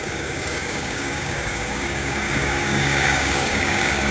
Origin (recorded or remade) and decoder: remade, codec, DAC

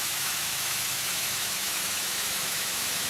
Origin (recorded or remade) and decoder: remade, autoencoder, DAC-VAE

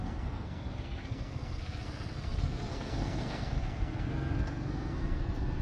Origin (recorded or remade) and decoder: remade, codec, SNAC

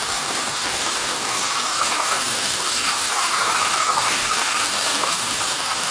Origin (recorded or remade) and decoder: remade, codec, DAC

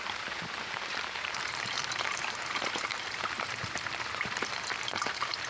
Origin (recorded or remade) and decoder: remade, vocoder, BigVGAN v2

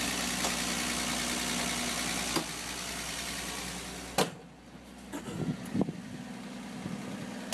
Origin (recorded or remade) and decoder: recorded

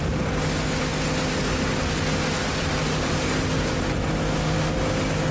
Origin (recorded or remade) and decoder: recorded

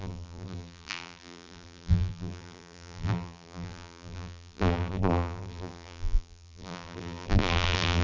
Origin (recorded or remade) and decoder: remade, vocoder, BigVGAN v2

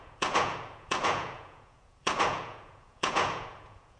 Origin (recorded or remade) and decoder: remade, vocoder, Vocos